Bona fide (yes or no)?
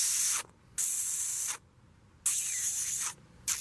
yes